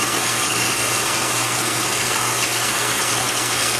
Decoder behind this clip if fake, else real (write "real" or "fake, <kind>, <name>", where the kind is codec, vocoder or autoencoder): fake, codec, SNAC